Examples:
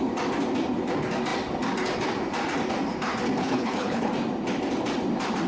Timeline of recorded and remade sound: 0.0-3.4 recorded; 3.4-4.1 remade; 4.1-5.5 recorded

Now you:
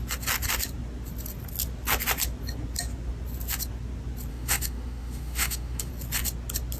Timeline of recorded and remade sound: 0.0-4.3 recorded; 4.3-5.9 remade; 5.9-6.8 recorded